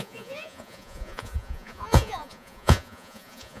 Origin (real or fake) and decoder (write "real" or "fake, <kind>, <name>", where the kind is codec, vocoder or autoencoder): fake, vocoder, Vocos